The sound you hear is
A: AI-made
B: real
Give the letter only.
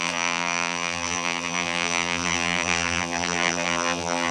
A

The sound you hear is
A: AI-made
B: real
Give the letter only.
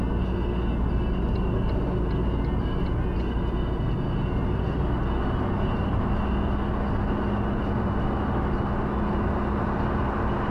B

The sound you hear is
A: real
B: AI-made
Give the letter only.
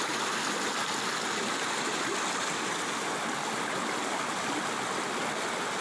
A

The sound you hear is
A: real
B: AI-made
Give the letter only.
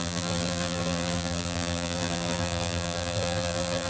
B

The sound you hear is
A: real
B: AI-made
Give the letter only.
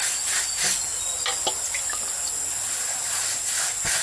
A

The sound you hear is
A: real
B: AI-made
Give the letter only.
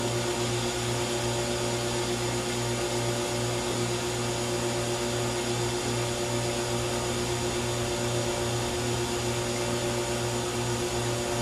A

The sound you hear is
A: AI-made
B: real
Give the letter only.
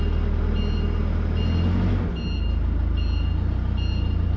B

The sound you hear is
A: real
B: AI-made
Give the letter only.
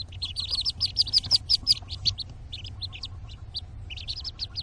A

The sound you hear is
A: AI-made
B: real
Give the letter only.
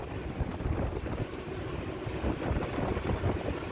B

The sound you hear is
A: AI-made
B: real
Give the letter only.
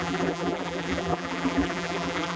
A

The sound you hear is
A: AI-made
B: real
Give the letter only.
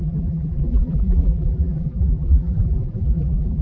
A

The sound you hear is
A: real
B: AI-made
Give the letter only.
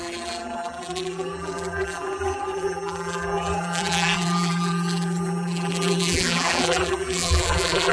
B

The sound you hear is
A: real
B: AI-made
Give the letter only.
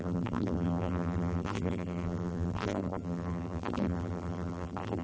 B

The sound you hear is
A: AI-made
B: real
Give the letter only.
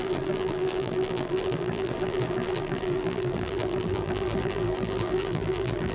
A